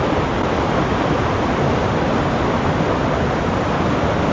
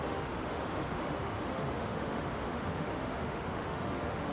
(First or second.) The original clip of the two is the first